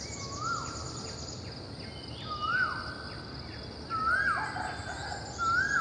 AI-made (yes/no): no